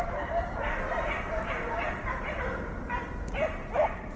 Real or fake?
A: real